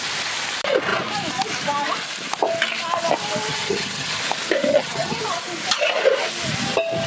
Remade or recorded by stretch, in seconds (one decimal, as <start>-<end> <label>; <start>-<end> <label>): 0.0-3.5 recorded; 3.5-4.2 remade; 4.2-4.7 recorded; 4.7-5.2 remade; 5.2-7.1 recorded